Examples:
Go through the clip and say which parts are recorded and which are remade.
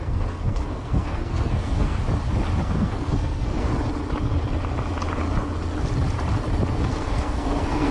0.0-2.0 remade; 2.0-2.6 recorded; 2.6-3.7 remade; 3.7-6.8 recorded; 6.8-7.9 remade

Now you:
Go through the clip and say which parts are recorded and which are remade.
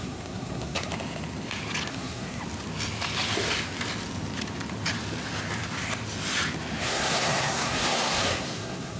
0.0-0.9 remade; 0.9-1.9 recorded; 1.9-2.4 remade; 2.4-6.8 recorded; 6.8-9.0 remade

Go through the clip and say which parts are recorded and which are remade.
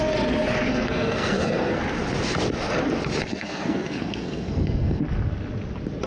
0.0-0.7 recorded; 0.7-1.8 remade; 1.8-3.3 recorded; 3.3-5.0 remade; 5.0-6.1 recorded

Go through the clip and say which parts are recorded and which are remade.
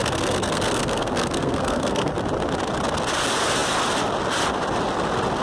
0.0-2.1 remade; 2.1-5.4 recorded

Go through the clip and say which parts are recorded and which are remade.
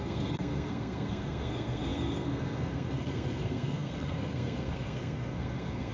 0.0-5.9 remade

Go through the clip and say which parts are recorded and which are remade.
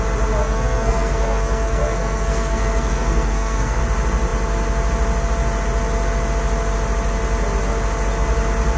0.0-0.4 recorded; 0.4-3.8 remade; 3.8-8.8 recorded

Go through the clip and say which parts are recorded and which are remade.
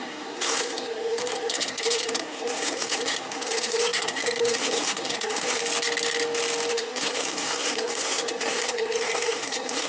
0.0-5.6 remade; 5.6-6.7 recorded; 6.7-9.9 remade